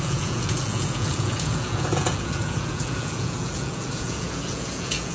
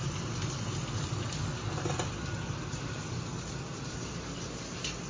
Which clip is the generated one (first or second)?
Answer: first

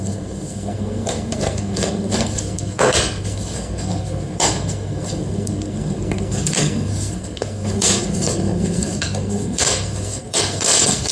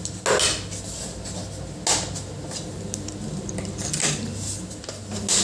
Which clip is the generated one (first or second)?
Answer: first